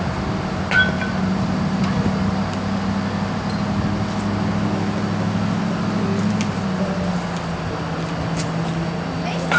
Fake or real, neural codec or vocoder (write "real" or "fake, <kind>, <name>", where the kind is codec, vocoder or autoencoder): real